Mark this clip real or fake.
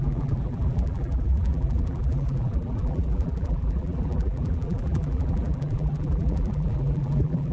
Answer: fake